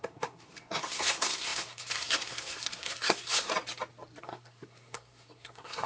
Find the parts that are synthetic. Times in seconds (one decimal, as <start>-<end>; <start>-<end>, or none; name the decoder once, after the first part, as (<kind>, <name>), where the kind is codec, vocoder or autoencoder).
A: 0.0-3.5 (codec, SNAC); 4.2-5.9